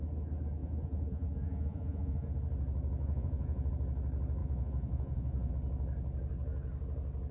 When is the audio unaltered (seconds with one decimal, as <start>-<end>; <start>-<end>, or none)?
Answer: 0.0-0.6; 2.3-3.0; 3.7-4.4; 5.5-7.3